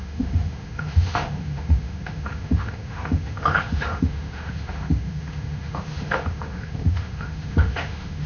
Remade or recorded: remade